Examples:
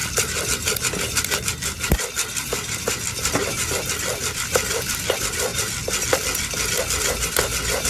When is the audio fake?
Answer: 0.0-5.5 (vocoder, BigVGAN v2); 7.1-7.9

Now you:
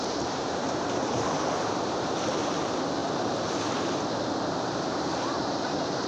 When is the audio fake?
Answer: 0.0-6.1 (vocoder, BigVGAN v2)